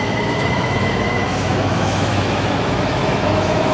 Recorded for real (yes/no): no